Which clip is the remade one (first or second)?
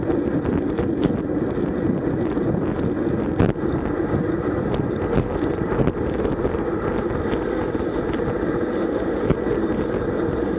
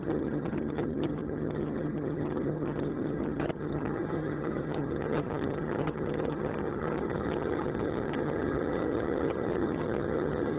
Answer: second